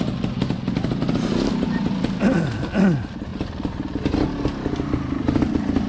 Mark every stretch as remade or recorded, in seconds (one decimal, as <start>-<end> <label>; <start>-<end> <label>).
0.0-5.9 recorded